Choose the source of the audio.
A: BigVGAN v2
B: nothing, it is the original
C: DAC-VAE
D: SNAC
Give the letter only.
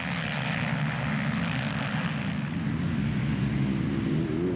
B